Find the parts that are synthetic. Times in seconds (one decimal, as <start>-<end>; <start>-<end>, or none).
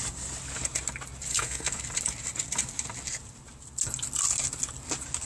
1.3-1.8